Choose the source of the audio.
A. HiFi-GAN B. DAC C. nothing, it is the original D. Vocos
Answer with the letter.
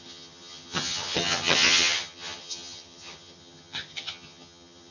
A